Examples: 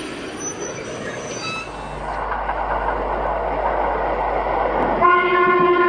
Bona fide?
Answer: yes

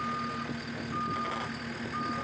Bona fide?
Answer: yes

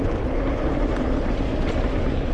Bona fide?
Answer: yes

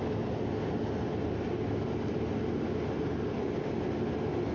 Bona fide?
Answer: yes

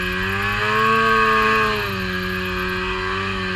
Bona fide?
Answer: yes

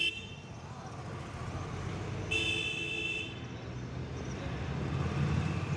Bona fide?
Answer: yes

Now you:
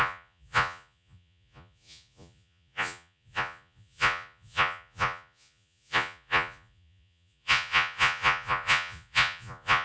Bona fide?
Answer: no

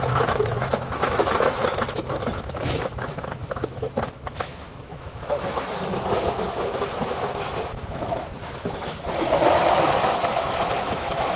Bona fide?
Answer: no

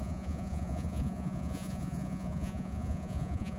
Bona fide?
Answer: no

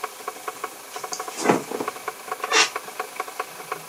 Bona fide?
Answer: yes